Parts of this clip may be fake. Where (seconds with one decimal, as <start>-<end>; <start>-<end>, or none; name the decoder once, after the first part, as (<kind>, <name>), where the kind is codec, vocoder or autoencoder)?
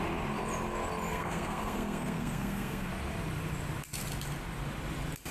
1.1-2.9 (codec, SNAC)